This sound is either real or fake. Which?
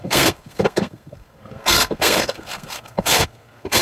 fake